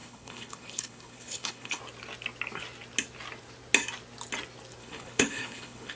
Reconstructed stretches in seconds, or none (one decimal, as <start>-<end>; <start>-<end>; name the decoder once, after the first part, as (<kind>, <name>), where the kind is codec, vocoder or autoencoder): 0.0-1.8 (codec, HILCodec); 4.8-6.0